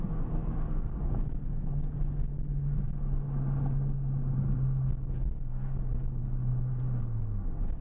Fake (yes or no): no